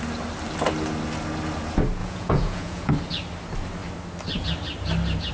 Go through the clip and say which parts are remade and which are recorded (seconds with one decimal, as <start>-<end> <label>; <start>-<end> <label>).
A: 0.0-2.0 recorded; 2.0-2.9 remade; 2.9-5.3 recorded